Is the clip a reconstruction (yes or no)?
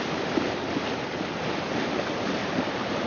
no